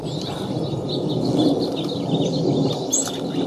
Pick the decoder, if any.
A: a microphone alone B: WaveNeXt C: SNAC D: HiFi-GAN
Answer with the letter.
A